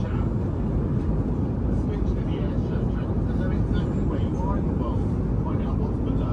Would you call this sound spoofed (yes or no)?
no